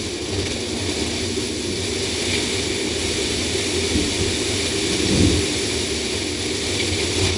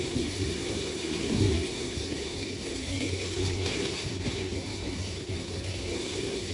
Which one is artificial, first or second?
second